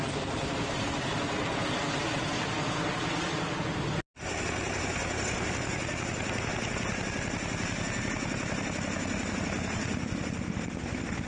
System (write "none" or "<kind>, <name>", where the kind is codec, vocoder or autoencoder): none